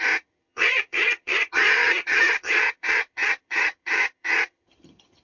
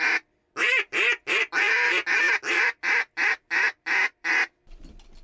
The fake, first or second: first